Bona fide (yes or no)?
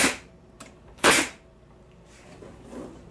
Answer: no